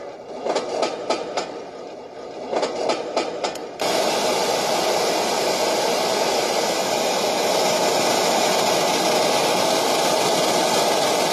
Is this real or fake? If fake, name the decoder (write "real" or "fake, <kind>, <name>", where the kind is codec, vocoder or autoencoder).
real